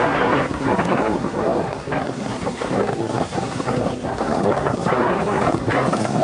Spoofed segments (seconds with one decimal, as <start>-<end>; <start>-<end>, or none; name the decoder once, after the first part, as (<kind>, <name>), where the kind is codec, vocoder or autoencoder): 0.0-6.2 (codec, SNAC)